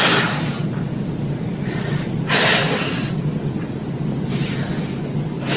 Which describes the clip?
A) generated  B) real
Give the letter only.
B